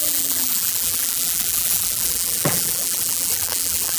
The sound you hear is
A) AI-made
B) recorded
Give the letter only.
A